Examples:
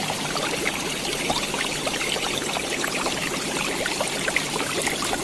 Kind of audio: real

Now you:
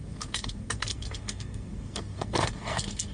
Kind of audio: fake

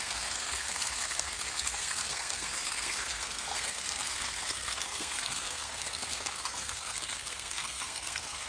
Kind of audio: fake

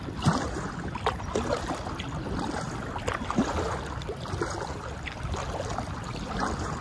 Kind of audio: real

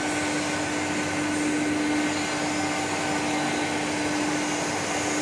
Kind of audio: real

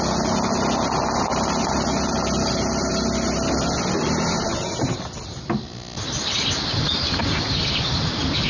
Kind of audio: real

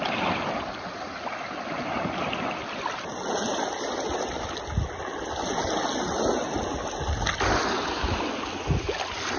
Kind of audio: real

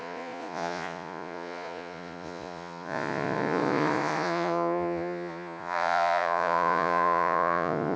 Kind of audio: fake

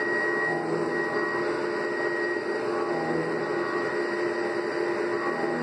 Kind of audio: real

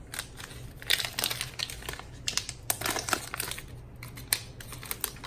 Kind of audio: real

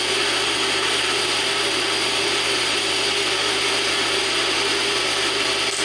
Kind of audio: real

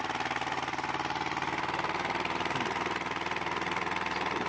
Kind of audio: real